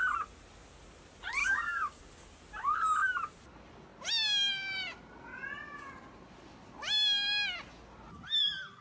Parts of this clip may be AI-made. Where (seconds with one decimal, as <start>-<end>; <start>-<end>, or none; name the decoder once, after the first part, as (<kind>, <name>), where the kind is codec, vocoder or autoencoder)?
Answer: 1.4-2.0 (codec, DAC)